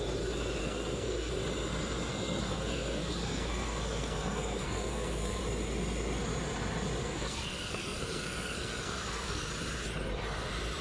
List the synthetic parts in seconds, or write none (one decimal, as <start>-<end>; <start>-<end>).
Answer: 0.6-1.3; 2.1-5.4; 7.0-9.5